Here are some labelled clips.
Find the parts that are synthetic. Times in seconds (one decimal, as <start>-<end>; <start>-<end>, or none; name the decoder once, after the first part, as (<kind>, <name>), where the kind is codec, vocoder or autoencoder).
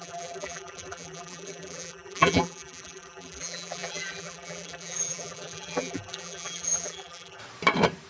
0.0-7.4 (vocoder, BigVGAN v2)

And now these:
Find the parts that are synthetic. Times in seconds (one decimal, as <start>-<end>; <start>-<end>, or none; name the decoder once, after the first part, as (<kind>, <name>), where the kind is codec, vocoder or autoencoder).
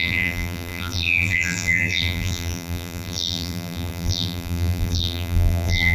0.0-5.9 (vocoder, BigVGAN v2)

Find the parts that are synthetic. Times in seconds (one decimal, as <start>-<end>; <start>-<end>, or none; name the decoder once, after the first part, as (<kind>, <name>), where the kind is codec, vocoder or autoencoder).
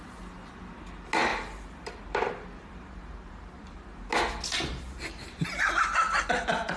1.3-4.0 (vocoder, BigVGAN v2)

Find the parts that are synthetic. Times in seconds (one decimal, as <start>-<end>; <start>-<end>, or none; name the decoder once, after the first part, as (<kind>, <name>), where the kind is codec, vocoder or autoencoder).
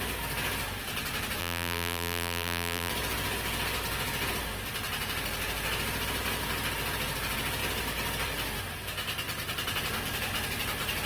1.4-2.9 (vocoder, BigVGAN v2)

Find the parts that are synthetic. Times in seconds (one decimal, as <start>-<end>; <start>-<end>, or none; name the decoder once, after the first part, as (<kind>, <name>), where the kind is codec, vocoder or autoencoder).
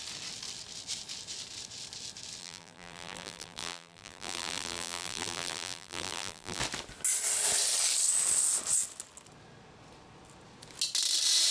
2.4-6.6 (vocoder, BigVGAN v2)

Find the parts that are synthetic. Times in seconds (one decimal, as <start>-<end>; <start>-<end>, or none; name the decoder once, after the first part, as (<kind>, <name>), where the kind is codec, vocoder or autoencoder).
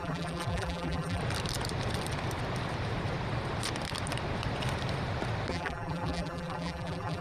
0.0-1.2 (vocoder, BigVGAN v2); 5.5-7.2